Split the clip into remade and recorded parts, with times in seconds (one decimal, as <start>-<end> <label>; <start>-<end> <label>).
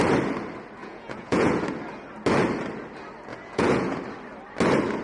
0.0-0.8 recorded; 0.8-1.6 remade; 1.6-3.3 recorded; 3.3-4.0 remade; 4.0-5.0 recorded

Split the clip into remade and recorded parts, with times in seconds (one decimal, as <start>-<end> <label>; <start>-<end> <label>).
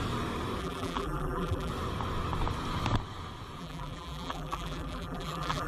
0.0-0.6 recorded; 0.6-1.7 remade; 1.7-3.6 recorded; 3.6-5.7 remade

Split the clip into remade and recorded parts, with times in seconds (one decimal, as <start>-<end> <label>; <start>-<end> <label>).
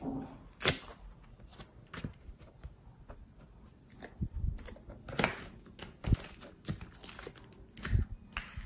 0.0-8.7 recorded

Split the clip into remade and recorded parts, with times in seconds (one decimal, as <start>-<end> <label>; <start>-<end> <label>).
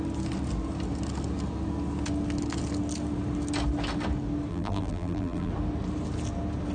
0.0-4.5 recorded; 4.5-5.5 remade; 5.5-6.7 recorded